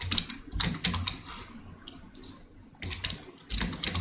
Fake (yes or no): no